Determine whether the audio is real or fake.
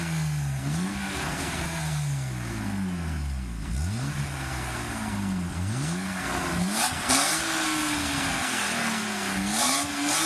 fake